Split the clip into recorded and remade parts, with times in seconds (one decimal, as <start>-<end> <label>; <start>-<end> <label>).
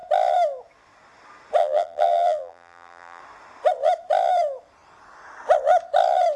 0.0-1.6 recorded; 1.6-3.2 remade; 3.2-6.4 recorded